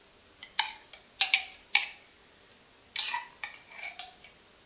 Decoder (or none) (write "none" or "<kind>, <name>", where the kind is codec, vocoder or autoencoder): none